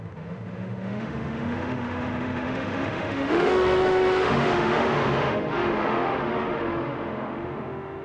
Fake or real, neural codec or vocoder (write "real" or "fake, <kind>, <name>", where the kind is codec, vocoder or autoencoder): fake, autoencoder, DAC-VAE